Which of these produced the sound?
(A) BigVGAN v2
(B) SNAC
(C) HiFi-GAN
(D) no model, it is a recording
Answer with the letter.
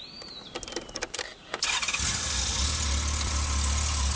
D